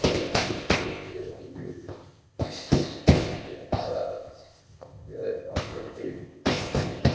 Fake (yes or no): yes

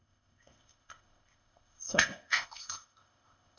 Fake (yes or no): yes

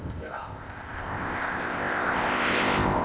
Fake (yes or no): yes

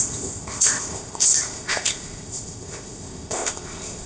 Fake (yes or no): yes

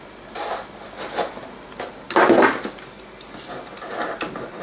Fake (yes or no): no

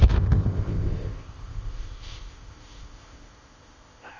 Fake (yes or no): yes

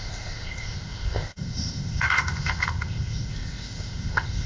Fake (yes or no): yes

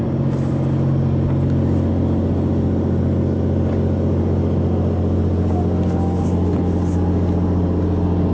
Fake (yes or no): no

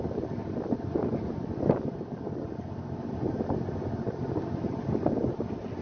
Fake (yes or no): no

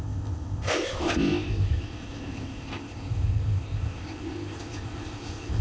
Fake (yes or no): yes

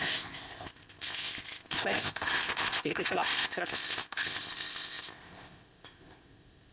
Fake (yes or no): yes